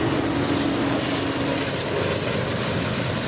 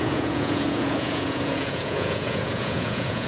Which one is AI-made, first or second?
second